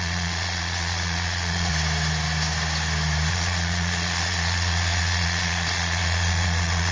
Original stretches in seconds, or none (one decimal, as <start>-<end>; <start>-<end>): 1.7-3.3